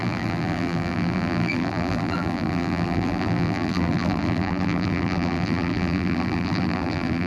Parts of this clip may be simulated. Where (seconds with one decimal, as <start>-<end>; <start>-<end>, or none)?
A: 0.0-7.3